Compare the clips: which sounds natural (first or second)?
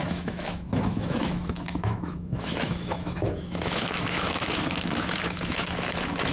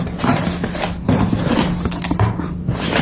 second